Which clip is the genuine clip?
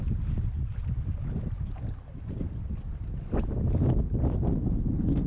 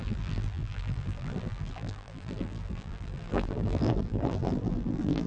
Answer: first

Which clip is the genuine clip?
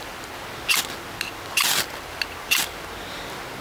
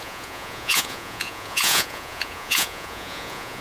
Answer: first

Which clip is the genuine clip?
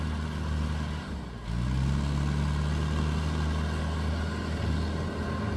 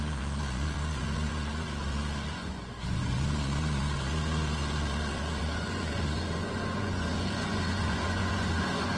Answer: first